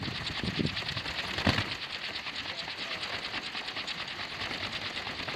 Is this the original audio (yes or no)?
yes